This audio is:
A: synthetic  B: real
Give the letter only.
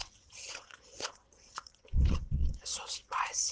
A